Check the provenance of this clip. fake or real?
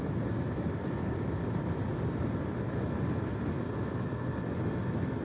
real